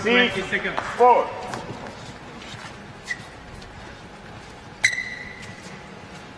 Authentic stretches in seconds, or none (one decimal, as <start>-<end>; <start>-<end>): 0.0-6.4